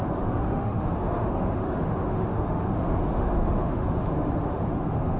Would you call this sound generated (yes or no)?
yes